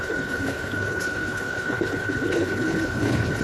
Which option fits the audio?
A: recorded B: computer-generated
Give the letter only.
B